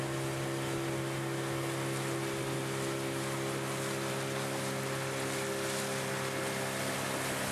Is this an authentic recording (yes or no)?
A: yes